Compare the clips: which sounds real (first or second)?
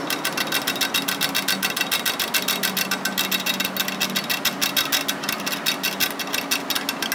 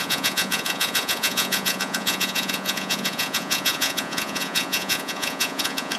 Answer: first